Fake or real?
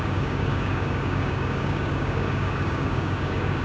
fake